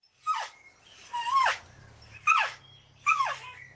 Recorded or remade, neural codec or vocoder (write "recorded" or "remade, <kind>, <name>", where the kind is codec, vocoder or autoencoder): recorded